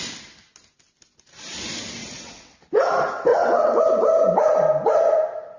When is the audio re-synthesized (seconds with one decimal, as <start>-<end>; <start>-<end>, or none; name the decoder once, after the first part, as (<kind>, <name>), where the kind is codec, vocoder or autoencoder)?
2.0-2.6 (vocoder, WaveNeXt); 3.3-3.8